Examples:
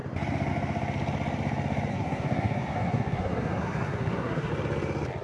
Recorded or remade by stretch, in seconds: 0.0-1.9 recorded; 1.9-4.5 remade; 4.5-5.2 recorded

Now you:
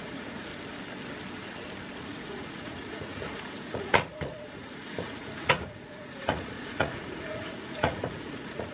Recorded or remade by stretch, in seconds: 0.0-0.5 remade; 0.5-2.0 recorded; 2.0-8.7 remade

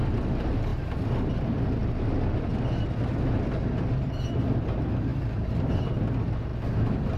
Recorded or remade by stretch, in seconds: 0.0-5.1 recorded; 5.1-5.9 remade; 5.9-6.5 recorded; 6.5-7.2 remade

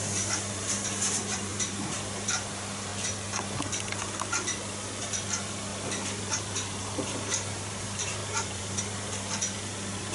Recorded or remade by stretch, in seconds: 0.0-2.9 remade; 2.9-5.0 recorded; 5.0-5.7 remade; 5.7-6.2 recorded; 6.2-10.1 remade

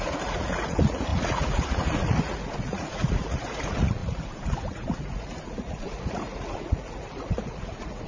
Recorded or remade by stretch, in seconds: 0.0-8.1 remade